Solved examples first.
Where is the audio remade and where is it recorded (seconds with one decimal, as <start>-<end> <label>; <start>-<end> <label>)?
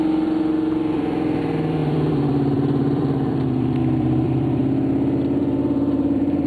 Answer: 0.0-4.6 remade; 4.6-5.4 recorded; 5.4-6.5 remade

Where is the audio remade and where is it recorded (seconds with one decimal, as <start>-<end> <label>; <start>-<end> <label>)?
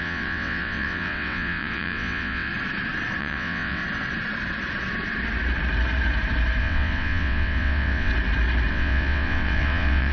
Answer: 0.0-2.5 remade; 2.5-3.2 recorded; 3.2-3.8 remade; 3.8-6.6 recorded; 6.6-8.1 remade; 8.1-8.7 recorded; 8.7-10.1 remade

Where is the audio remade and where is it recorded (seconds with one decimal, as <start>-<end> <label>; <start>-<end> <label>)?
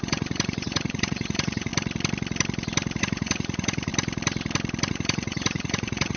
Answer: 0.0-1.7 remade; 1.7-3.0 recorded; 3.0-3.9 remade; 3.9-4.9 recorded; 4.9-6.2 remade